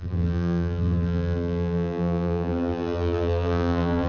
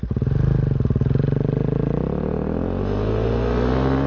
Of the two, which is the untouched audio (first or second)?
second